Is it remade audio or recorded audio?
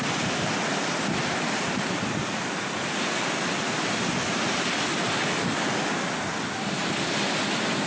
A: recorded